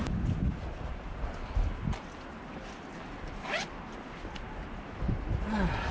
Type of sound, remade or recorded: recorded